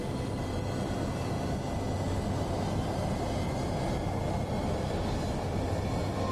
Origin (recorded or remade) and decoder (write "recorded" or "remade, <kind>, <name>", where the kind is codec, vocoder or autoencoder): recorded